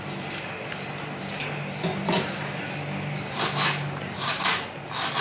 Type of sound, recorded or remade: recorded